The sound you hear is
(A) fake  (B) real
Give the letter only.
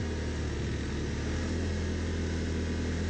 B